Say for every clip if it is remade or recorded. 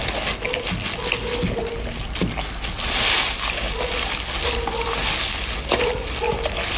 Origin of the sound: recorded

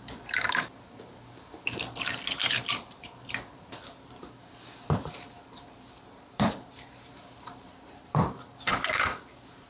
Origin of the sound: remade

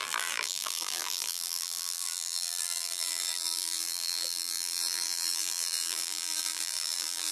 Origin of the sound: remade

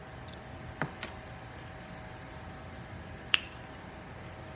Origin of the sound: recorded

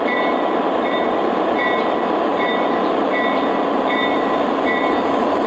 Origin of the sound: remade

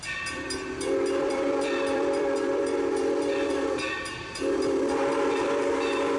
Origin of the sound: remade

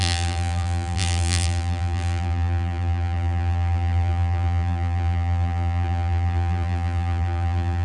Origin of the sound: remade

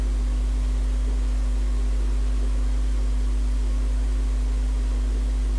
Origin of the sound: recorded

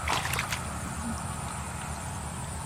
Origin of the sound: recorded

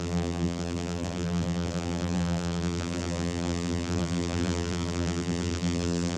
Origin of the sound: remade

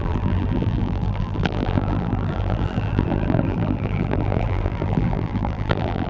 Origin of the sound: remade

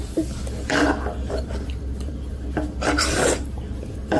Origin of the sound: remade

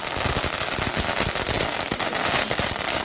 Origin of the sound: recorded